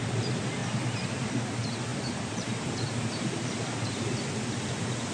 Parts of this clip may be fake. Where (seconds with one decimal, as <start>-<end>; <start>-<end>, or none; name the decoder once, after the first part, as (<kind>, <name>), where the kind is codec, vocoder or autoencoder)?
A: 1.9-3.9 (vocoder, BigVGAN v2)